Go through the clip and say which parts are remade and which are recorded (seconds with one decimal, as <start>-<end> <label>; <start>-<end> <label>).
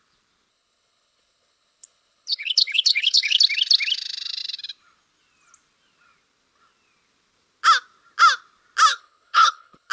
0.0-0.5 recorded; 0.5-3.4 remade; 3.4-8.9 recorded; 8.9-9.9 remade